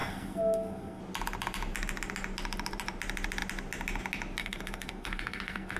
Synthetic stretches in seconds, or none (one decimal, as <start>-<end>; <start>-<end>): 0.0-1.0; 4.4-5.8